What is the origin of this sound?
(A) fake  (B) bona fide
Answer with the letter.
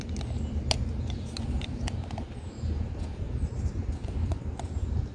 B